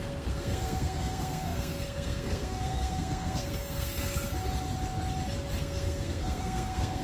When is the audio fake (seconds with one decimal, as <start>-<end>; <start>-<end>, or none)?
0.0-4.3; 5.6-7.0